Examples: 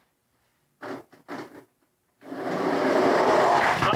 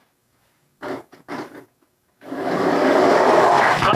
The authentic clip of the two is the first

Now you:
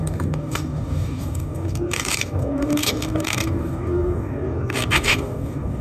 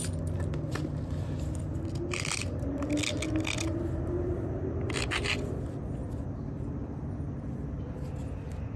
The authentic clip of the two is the second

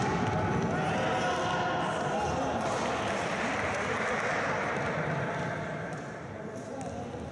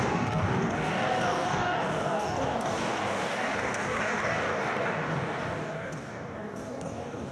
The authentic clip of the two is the first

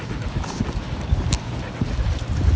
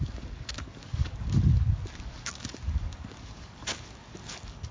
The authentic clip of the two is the first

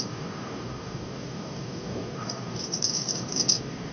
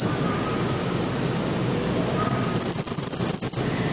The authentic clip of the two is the second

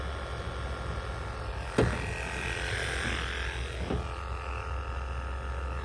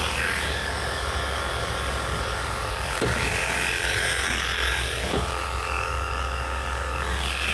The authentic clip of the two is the first